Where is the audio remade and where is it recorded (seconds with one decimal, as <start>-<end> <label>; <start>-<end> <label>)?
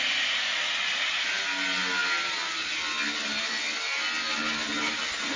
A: 0.0-5.4 recorded